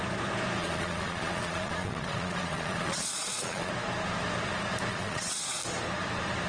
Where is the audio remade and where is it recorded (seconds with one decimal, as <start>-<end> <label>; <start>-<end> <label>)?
0.0-0.6 recorded; 0.6-3.7 remade; 3.7-4.9 recorded; 4.9-5.6 remade; 5.6-6.5 recorded